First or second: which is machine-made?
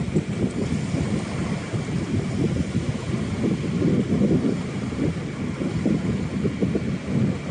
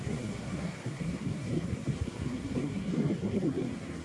second